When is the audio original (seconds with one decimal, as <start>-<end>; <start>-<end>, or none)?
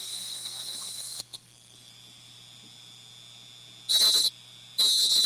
1.9-5.3